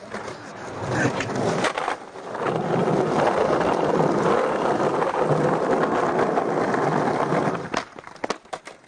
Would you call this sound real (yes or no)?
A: yes